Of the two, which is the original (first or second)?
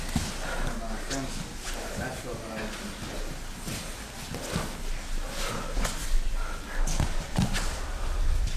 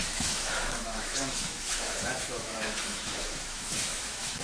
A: first